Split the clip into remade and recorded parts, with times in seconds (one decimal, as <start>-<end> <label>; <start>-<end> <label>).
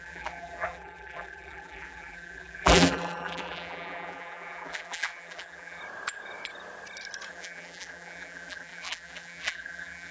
0.0-5.8 remade; 5.8-7.3 recorded; 7.3-10.1 remade